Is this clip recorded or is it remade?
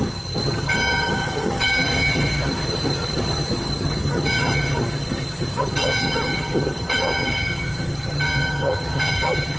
remade